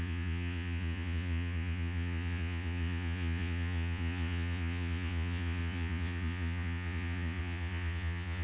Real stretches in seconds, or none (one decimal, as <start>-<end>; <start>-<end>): none